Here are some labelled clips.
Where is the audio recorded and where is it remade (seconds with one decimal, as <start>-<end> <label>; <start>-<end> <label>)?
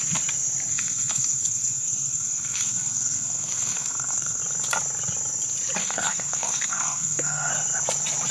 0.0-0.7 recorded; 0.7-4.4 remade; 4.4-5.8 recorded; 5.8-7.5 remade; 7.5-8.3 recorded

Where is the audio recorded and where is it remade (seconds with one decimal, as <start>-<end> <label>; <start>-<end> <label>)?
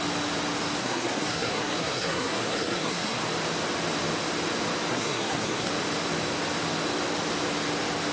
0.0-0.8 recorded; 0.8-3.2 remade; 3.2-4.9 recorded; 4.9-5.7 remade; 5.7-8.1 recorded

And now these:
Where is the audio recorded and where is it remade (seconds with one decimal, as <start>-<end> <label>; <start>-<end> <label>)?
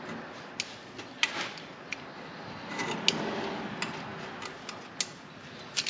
0.0-5.9 recorded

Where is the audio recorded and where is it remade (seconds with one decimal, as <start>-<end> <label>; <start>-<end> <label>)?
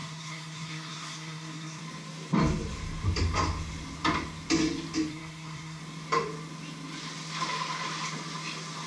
0.0-1.8 remade; 1.8-5.1 recorded; 5.1-5.8 remade; 5.8-8.9 recorded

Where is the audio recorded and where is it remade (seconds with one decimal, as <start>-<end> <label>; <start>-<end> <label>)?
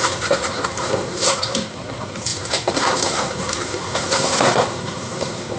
0.0-5.6 remade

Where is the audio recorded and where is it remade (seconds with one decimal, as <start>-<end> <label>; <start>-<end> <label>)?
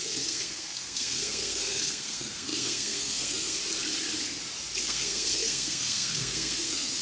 0.0-3.6 remade; 3.6-4.8 recorded; 4.8-7.0 remade